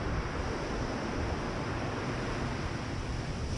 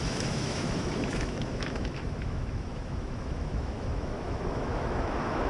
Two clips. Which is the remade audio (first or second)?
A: second